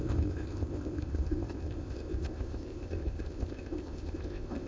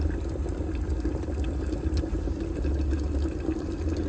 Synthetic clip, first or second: first